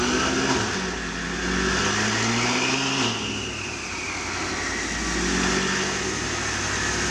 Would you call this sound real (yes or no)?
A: yes